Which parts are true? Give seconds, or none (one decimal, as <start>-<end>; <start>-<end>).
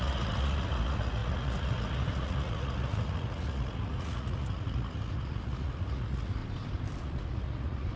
6.4-7.0